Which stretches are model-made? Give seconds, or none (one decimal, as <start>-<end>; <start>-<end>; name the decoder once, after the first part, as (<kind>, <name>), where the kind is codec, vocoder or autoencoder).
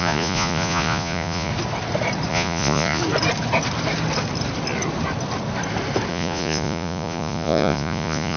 0.0-1.5 (vocoder, Vocos); 2.3-3.0; 6.1-8.4